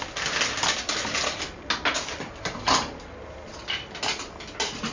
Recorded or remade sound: recorded